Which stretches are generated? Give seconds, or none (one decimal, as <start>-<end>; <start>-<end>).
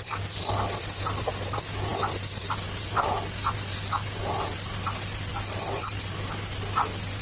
none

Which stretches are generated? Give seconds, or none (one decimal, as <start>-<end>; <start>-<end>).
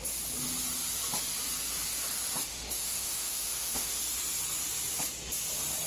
2.5-3.9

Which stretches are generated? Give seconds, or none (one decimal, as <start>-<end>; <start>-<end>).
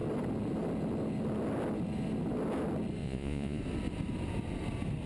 3.0-3.6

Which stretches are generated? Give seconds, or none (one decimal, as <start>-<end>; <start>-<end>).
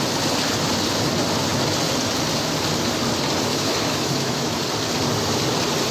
3.5-4.6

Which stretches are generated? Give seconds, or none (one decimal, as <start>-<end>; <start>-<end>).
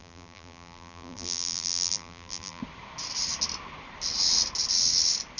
0.0-2.6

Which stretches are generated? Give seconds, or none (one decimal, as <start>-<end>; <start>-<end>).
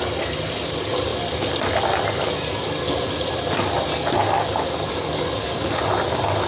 none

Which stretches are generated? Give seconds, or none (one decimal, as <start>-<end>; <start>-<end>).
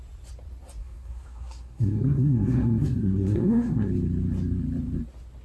0.8-3.9